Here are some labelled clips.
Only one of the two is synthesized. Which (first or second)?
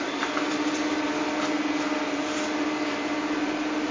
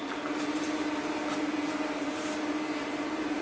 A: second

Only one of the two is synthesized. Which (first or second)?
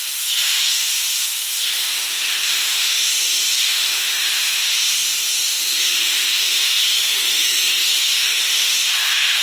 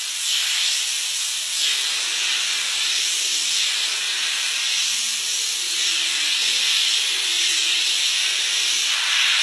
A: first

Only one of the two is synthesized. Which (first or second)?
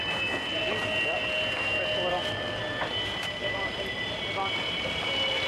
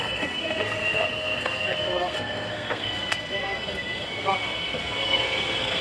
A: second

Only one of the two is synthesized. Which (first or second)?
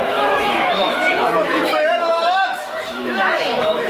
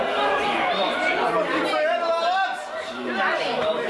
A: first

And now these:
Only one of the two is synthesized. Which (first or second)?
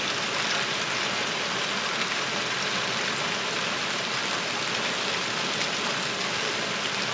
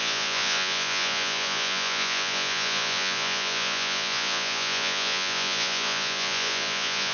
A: second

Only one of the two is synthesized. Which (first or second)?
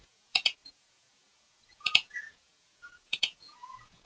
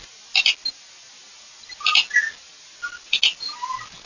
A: first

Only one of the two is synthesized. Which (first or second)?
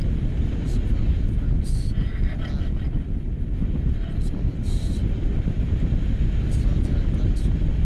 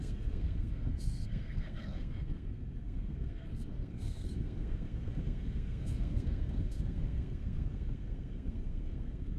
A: second